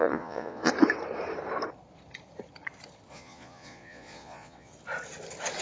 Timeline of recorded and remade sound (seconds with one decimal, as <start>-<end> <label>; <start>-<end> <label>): 0.0-0.7 remade; 0.7-3.1 recorded; 3.1-4.7 remade; 4.7-5.6 recorded